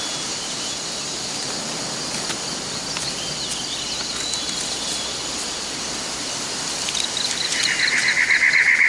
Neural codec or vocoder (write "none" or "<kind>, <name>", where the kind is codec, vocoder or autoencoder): none